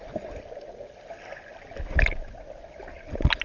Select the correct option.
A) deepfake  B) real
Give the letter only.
B